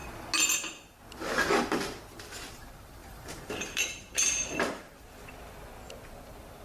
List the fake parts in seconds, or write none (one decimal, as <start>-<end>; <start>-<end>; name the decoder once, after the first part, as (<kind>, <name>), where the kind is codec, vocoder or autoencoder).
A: 2.1-2.6 (vocoder, BigVGAN v2); 3.0-5.3